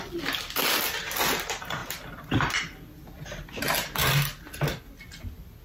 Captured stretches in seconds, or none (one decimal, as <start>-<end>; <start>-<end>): 0.0-5.6